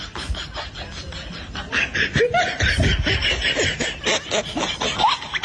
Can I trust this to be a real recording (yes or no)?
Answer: yes